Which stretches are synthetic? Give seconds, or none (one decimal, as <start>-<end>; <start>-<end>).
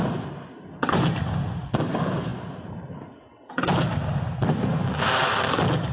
none